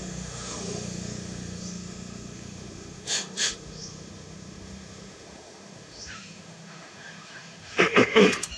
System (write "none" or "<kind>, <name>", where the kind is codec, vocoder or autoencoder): autoencoder, DAC-VAE